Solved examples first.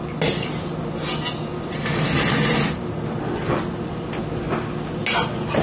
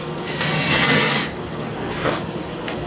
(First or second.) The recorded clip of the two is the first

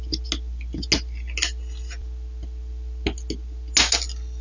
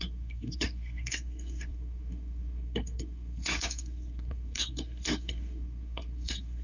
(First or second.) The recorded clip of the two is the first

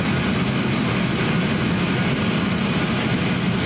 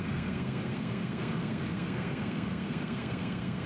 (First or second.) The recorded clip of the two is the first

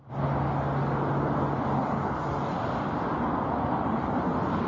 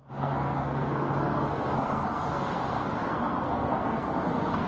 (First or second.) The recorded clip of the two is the first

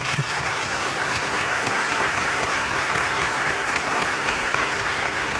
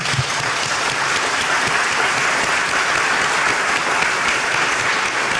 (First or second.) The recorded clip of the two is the second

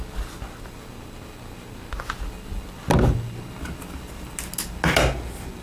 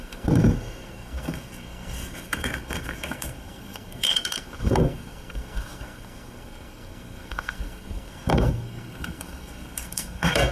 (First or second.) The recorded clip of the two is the first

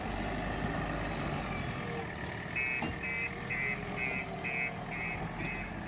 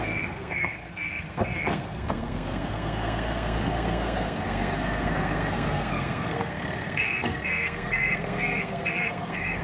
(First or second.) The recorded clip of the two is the first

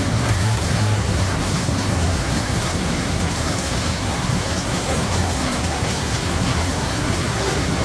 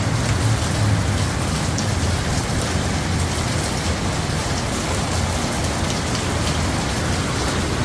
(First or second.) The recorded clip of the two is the second